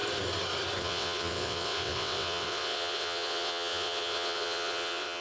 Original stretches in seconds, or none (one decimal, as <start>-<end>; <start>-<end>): 0.0-0.8